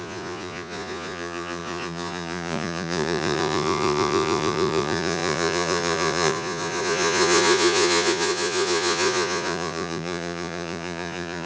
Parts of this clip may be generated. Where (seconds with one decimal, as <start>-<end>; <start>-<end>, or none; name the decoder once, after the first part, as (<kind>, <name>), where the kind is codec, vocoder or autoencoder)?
0.0-11.4 (vocoder, Vocos)